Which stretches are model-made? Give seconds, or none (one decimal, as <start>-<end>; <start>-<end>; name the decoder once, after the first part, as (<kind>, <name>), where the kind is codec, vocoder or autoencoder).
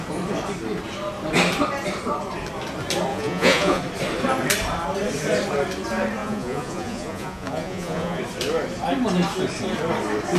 3.1-3.8 (vocoder, Vocos); 6.2-8.2